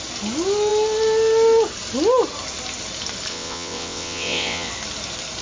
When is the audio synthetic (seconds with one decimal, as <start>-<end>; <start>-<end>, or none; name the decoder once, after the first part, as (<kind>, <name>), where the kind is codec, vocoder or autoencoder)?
3.3-4.7 (vocoder, WaveNeXt)